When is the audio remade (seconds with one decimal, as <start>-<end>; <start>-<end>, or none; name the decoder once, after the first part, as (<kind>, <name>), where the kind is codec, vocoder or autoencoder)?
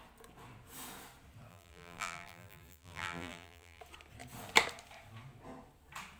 1.5-3.8 (vocoder, BigVGAN v2)